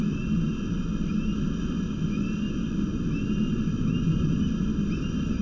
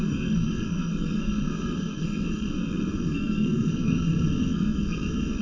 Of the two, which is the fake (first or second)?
second